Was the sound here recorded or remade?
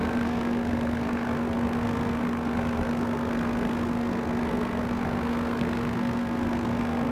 remade